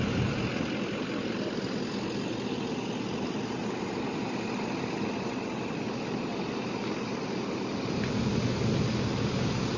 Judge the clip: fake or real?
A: real